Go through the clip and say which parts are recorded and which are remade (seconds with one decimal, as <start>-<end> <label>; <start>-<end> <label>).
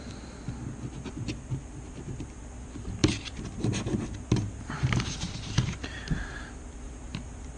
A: 0.0-3.0 recorded; 3.0-7.6 remade